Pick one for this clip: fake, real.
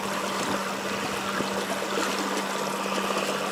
real